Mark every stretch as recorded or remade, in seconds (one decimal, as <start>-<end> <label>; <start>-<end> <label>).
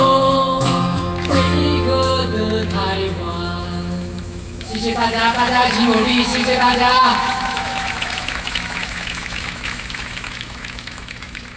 0.0-11.6 remade